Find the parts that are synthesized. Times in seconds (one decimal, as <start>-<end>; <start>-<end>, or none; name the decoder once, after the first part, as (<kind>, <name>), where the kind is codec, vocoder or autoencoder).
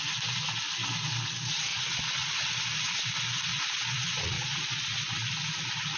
1.7-2.5 (vocoder, Vocos); 3.5-5.3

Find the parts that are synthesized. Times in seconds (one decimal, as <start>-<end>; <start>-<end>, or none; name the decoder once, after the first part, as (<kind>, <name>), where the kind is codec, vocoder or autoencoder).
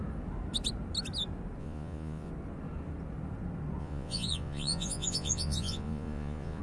1.6-2.3 (vocoder, Vocos); 3.8-6.6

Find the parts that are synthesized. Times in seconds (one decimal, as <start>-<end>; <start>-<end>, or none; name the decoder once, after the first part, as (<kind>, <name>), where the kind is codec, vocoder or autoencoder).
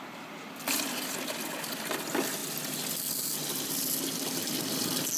none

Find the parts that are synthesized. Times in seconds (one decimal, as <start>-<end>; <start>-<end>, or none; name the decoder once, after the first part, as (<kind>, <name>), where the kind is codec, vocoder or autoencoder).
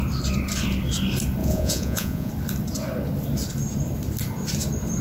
1.4-2.3 (vocoder, Vocos)